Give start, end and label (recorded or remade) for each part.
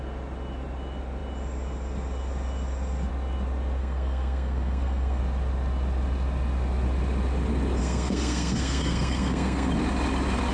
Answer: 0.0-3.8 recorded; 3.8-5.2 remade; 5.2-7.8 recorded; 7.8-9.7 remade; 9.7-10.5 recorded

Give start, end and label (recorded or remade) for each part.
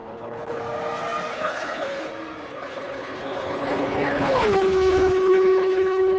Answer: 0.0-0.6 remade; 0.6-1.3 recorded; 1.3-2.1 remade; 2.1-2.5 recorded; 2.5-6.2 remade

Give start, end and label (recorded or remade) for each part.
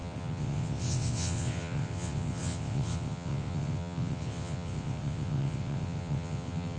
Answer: 0.0-6.8 remade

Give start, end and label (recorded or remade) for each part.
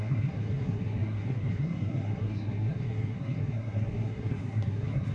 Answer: 0.0-5.1 remade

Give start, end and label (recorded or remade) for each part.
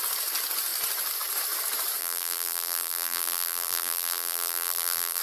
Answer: 0.0-2.0 recorded; 2.0-5.2 remade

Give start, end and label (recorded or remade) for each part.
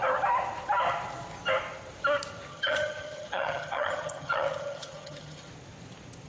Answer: 0.0-2.5 recorded; 2.5-5.5 remade; 5.5-6.3 recorded